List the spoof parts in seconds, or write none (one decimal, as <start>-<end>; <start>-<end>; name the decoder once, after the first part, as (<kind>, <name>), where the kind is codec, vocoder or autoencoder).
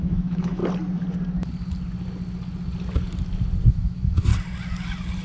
0.0-0.6 (autoencoder, DAC-VAE); 3.7-4.3